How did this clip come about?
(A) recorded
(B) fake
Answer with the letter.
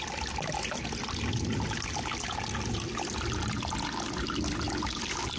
A